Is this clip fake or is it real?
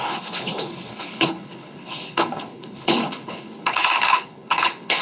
fake